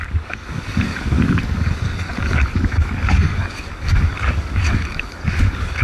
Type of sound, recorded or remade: remade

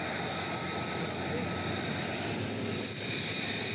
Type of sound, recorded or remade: recorded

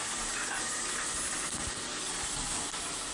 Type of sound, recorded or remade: recorded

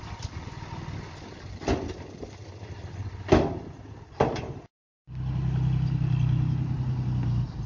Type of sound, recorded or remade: recorded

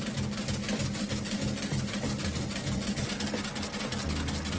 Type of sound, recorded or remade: recorded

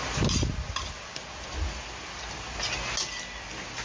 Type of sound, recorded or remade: recorded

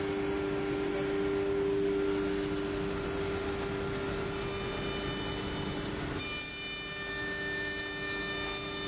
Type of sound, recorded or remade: recorded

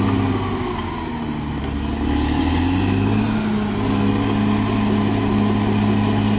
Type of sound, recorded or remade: recorded